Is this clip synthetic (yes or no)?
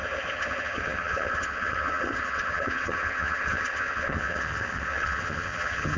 yes